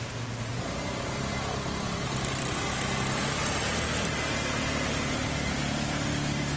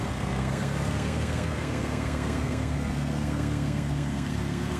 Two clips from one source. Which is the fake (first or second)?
second